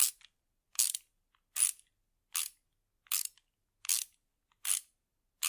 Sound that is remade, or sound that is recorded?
recorded